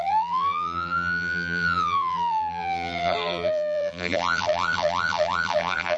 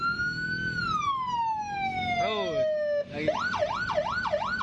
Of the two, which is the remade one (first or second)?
first